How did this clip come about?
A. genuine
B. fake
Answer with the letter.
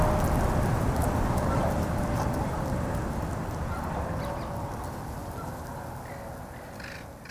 A